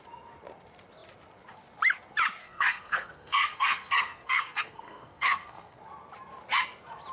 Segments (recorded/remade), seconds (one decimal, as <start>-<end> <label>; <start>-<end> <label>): 0.0-2.4 recorded; 2.4-5.8 remade; 5.8-7.1 recorded